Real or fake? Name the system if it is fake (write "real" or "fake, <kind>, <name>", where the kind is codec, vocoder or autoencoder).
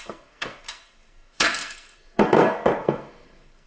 fake, codec, SNAC